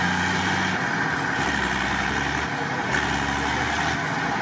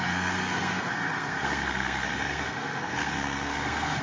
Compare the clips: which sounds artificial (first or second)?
second